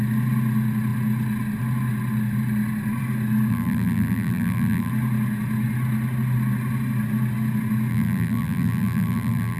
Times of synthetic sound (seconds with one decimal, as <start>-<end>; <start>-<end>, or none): 3.5-4.9; 7.9-9.6